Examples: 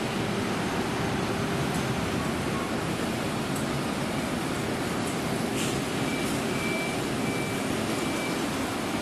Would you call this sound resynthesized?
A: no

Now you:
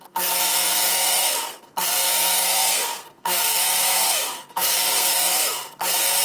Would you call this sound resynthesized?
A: yes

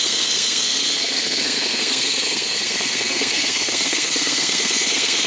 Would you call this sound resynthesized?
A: yes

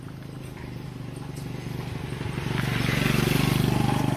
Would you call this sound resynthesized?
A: no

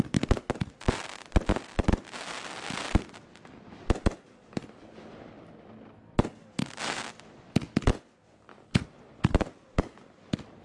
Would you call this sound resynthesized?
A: no